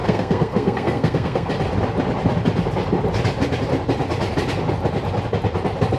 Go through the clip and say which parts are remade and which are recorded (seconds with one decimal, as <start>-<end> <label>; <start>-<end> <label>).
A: 0.0-1.5 remade; 1.5-6.0 recorded